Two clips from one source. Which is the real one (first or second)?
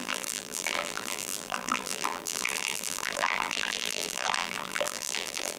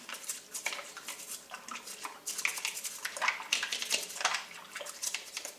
second